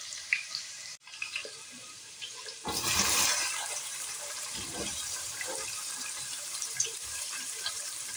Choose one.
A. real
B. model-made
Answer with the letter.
B